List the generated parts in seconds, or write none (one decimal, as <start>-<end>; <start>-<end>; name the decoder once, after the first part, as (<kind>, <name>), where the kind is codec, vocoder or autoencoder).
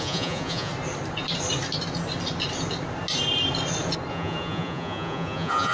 0.0-0.7 (vocoder, Vocos); 4.1-5.7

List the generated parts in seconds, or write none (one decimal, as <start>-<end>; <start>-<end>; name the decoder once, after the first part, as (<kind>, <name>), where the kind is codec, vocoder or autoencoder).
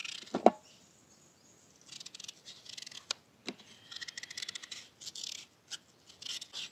none